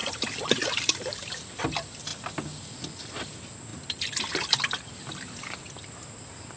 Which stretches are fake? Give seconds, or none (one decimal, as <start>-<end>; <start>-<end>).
0.0-1.3

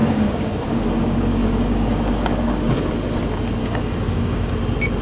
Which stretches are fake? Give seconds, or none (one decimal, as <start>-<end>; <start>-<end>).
0.0-2.7; 3.6-4.5

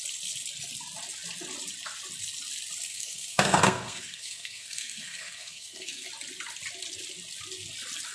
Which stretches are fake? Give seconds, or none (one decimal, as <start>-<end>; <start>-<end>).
2.9-6.1

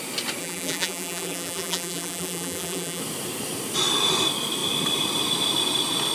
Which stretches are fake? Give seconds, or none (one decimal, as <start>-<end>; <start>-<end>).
0.4-3.0

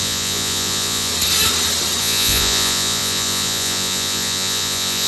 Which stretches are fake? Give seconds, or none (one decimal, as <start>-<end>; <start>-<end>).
0.0-1.1; 2.0-5.1

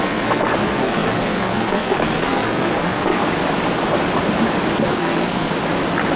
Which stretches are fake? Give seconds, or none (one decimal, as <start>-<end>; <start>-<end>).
0.0-3.2; 4.9-5.5

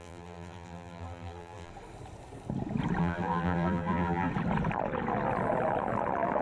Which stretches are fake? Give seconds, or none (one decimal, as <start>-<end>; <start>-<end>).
0.0-1.7; 3.0-4.3